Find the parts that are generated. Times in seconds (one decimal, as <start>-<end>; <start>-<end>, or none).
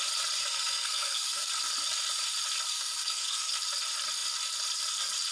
0.4-1.5; 2.7-3.5